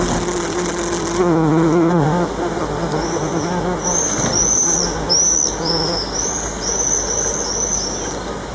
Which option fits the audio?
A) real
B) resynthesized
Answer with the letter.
A